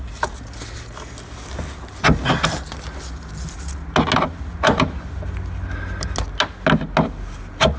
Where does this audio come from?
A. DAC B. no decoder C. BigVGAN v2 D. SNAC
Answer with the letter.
B